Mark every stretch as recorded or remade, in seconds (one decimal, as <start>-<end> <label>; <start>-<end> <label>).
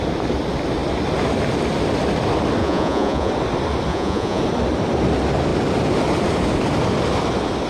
0.0-2.6 recorded; 2.6-3.3 remade; 3.3-3.9 recorded; 3.9-4.4 remade; 4.4-7.7 recorded